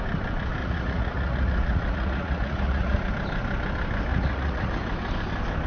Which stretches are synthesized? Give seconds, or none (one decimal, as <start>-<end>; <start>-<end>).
0.6-3.1; 4.1-4.7